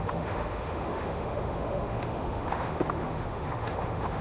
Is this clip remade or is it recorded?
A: remade